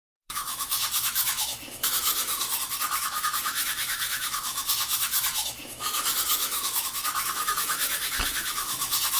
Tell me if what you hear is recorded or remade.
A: remade